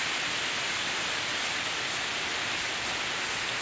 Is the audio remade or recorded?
recorded